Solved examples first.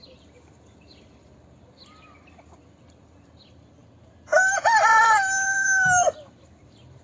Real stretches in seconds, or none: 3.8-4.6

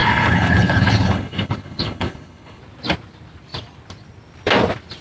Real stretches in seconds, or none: 2.6-5.0

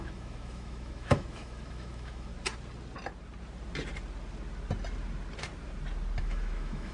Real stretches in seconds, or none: 2.3-6.2

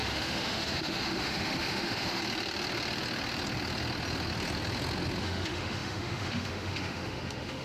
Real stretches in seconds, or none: 2.2-5.2